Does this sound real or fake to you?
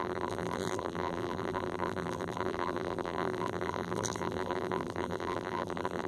fake